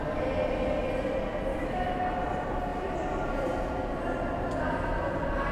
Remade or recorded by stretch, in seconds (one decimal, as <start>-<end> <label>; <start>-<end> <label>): 0.0-1.5 recorded; 1.5-2.0 remade; 2.0-5.5 recorded